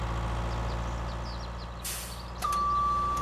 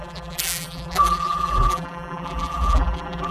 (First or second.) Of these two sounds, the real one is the first